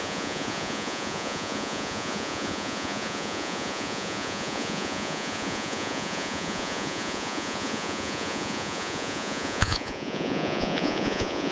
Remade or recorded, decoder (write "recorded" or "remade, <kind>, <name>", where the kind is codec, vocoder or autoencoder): remade, vocoder, Vocos